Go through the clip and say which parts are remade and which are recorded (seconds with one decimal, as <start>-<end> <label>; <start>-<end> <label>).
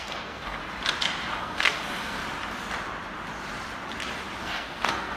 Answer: 0.0-0.6 remade; 0.6-1.4 recorded; 1.4-2.2 remade; 2.2-4.4 recorded; 4.4-5.2 remade